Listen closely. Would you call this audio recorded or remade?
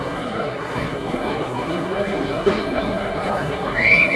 remade